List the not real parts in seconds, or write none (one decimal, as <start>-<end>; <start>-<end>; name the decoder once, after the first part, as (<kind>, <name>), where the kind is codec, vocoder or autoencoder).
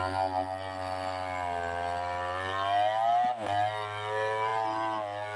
none